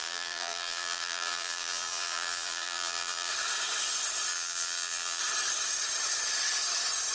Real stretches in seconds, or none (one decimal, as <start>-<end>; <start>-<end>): 3.3-4.3; 5.2-7.1